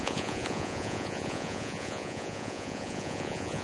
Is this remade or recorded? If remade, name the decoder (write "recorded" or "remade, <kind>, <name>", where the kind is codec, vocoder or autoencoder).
remade, vocoder, Vocos